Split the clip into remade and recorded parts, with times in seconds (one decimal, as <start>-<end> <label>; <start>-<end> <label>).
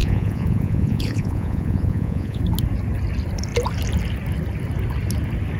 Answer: 0.0-2.4 remade; 2.4-5.6 recorded